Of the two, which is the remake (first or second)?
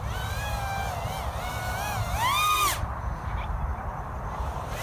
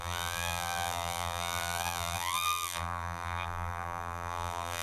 second